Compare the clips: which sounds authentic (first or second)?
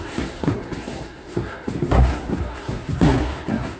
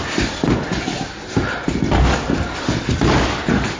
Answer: second